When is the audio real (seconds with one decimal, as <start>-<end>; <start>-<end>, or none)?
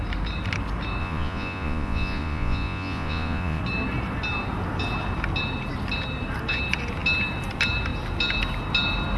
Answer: 0.0-1.0; 3.6-9.2